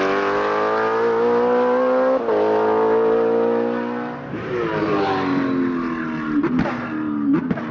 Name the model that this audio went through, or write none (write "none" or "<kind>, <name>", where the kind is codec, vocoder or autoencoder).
none